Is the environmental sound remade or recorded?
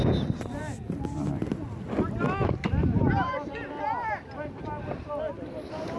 recorded